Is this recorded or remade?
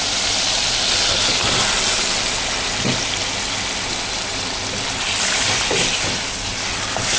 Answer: recorded